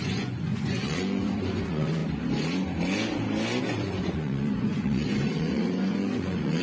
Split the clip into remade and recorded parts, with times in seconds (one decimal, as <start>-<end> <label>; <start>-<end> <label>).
0.0-2.0 remade; 2.0-3.6 recorded; 3.6-6.6 remade